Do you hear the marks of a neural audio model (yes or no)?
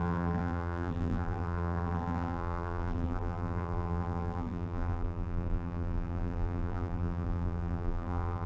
yes